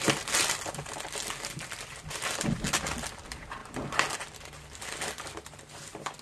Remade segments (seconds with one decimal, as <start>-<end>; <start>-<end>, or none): 0.0-3.6; 4.2-6.2